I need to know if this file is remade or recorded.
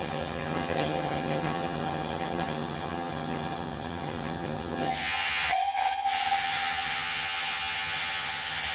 remade